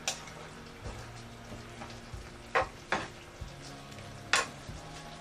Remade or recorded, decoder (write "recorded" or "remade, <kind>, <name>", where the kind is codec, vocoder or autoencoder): recorded